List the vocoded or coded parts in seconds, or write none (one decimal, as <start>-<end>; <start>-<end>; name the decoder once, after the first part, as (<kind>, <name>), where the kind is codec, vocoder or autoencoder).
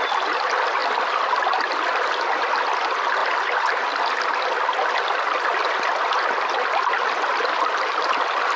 3.2-4.2 (vocoder, BigVGAN v2)